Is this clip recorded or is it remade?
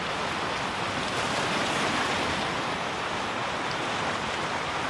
recorded